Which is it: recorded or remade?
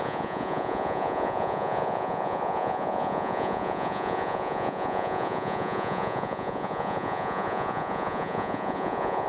remade